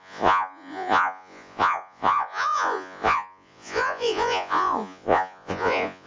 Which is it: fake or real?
fake